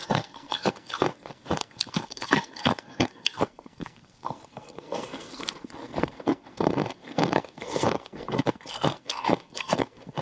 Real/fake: fake